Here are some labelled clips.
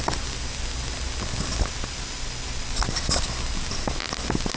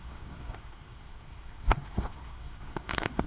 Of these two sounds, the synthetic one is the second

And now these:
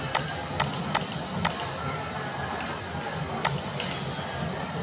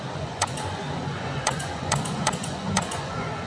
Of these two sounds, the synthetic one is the second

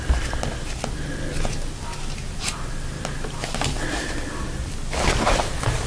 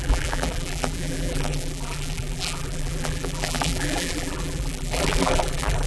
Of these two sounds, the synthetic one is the second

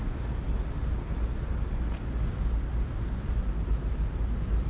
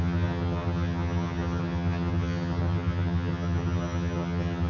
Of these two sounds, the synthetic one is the second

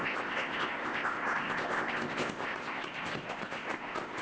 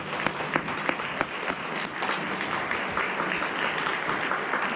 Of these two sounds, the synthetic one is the first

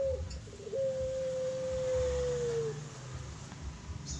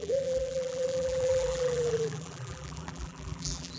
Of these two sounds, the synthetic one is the second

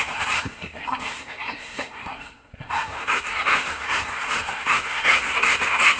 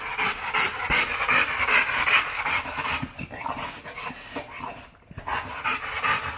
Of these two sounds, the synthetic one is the first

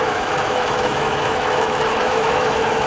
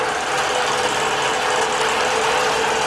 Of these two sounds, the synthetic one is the first